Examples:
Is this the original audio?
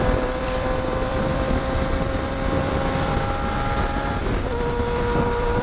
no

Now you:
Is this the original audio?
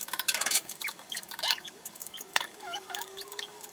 no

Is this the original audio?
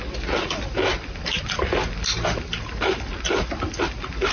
yes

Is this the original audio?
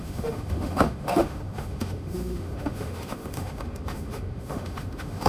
no